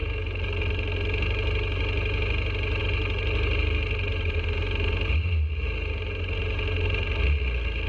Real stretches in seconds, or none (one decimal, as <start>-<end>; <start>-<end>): 0.0-7.9